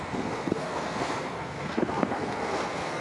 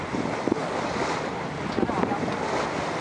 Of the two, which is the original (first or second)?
second